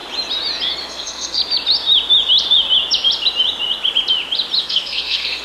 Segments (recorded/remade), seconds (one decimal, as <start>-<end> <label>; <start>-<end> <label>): 0.0-0.8 recorded; 0.8-1.4 remade; 1.4-4.6 recorded; 4.6-5.4 remade